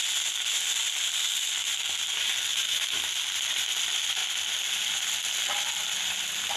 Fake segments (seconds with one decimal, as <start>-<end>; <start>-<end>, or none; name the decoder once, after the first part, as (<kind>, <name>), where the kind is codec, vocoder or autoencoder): 2.5-3.0 (autoencoder, DAC-VAE)